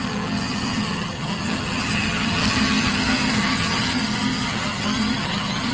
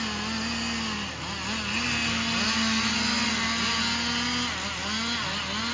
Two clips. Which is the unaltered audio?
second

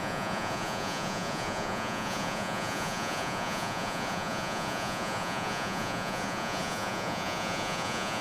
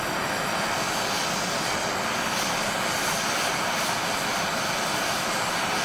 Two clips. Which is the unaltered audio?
second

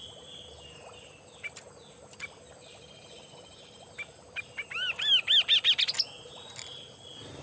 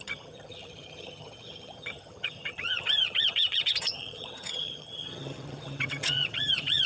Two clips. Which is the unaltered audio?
first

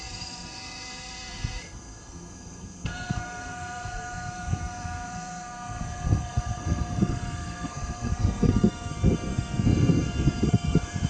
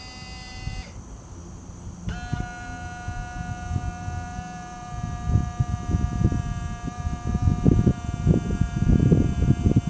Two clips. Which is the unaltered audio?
second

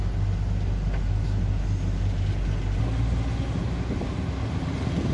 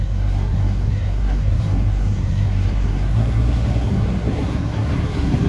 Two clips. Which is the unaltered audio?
first